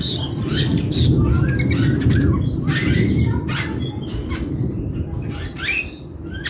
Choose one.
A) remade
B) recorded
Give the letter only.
B